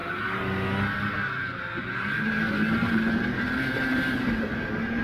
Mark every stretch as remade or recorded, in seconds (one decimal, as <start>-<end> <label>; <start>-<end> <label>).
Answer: 0.0-1.8 recorded; 1.8-5.0 remade